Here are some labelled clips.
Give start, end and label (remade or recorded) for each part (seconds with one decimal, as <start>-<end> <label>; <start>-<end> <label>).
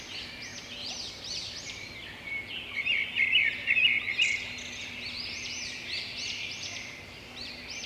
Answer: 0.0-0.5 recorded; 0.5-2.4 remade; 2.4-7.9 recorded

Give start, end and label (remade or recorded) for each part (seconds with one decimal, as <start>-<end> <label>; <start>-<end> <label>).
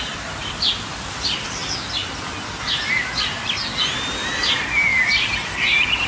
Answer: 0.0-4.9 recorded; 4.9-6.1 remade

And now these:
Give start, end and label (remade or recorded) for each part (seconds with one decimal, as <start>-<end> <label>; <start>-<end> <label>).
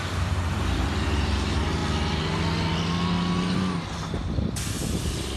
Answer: 0.0-1.8 remade; 1.8-5.0 recorded; 5.0-5.4 remade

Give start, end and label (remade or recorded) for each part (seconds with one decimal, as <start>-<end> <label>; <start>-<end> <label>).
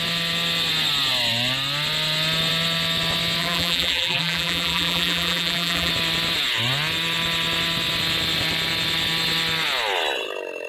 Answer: 0.0-3.4 recorded; 3.4-5.9 remade; 5.9-10.7 recorded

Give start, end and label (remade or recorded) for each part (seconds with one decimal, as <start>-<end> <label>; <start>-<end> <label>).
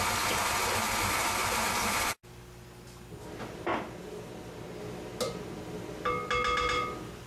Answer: 0.0-7.3 recorded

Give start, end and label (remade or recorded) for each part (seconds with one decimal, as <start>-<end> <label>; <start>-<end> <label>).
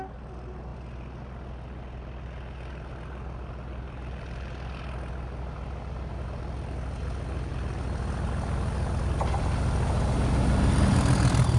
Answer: 0.0-11.6 recorded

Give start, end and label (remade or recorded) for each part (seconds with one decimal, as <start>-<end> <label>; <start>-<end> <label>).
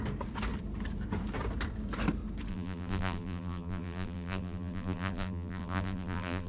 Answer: 0.0-2.5 recorded; 2.5-6.5 remade